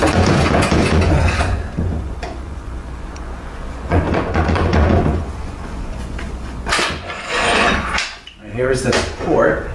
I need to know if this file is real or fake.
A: fake